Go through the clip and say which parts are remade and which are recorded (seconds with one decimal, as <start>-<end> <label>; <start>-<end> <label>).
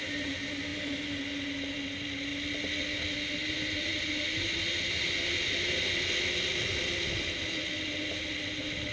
0.0-8.9 recorded